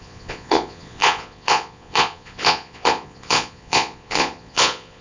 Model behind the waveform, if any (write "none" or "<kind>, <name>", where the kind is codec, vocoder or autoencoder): vocoder, Vocos